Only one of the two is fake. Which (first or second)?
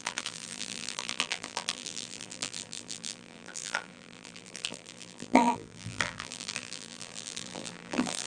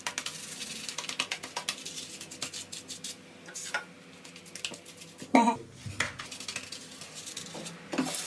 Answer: first